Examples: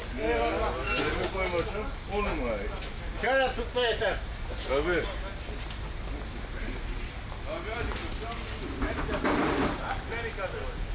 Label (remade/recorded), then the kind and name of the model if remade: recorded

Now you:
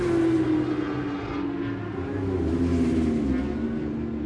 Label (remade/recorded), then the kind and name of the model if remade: recorded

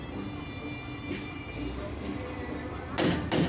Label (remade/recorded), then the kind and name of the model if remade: recorded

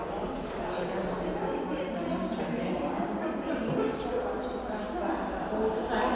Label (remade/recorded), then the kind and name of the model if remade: recorded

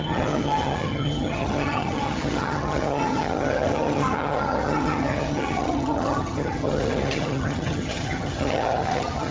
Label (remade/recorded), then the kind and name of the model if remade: remade, vocoder, HiFi-GAN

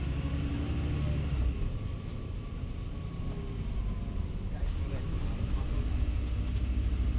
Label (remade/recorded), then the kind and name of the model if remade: recorded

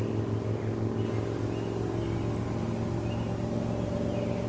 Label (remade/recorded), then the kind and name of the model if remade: recorded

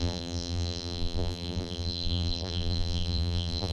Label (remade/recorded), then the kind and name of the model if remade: remade, vocoder, BigVGAN v2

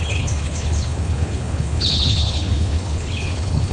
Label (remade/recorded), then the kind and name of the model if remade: remade, codec, HILCodec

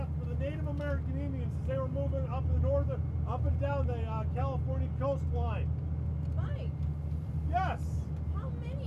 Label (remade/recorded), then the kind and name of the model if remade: recorded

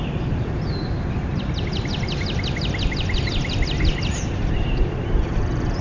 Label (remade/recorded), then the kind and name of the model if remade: recorded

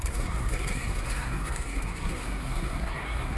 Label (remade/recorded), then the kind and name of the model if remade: remade, codec, SNAC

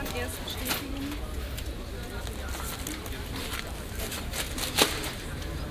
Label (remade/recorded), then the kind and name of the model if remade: recorded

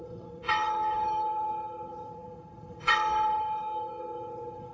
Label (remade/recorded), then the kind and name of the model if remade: remade, vocoder, HiFi-GAN